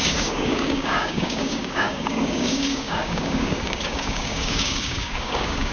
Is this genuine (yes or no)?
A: no